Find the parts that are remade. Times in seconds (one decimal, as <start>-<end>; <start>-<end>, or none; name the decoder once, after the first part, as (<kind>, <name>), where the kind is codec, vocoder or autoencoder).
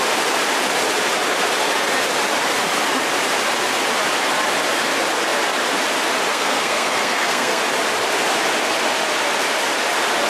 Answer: 6.3-7.6 (codec, SNAC)